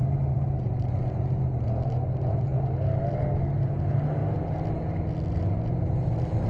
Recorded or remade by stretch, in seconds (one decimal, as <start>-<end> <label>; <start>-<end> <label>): 0.0-0.9 remade; 0.9-6.5 recorded